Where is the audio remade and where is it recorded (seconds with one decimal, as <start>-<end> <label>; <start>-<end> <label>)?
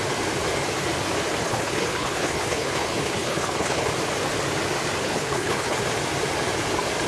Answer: 0.0-1.4 recorded; 1.4-3.9 remade; 3.9-5.0 recorded; 5.0-5.8 remade; 5.8-7.1 recorded